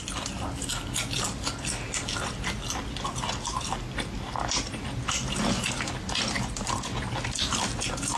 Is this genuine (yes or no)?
yes